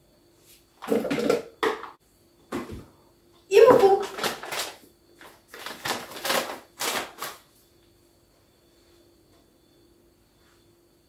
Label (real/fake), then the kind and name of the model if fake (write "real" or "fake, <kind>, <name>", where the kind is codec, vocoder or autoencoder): real